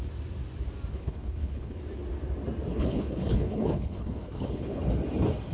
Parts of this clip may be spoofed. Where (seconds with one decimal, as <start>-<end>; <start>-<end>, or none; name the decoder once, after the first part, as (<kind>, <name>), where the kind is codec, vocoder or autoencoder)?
0.9-1.8 (codec, HILCodec); 2.7-4.8

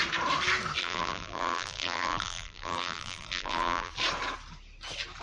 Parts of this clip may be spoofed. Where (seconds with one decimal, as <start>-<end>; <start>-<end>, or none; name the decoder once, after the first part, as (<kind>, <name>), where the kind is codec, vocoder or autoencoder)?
0.8-3.9 (vocoder, BigVGAN v2)

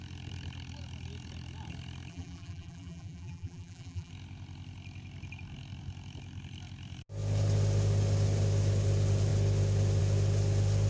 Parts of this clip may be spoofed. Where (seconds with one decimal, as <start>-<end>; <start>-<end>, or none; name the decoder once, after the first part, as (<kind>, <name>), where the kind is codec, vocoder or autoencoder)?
2.1-4.1 (vocoder, BigVGAN v2)

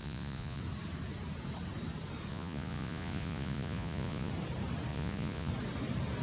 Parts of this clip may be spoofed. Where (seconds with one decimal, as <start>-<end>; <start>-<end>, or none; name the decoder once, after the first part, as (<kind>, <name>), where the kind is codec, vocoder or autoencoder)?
0.0-0.6 (vocoder, Vocos); 2.3-4.3; 4.9-5.5

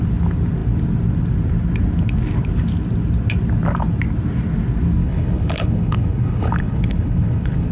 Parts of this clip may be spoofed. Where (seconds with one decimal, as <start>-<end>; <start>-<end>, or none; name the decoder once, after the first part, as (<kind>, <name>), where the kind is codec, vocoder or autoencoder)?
5.0-7.7 (codec, HILCodec)

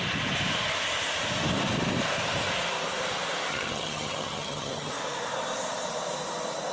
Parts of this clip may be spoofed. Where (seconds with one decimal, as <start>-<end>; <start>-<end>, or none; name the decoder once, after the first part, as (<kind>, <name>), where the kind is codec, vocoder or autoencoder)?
3.5-4.9 (vocoder, HiFi-GAN)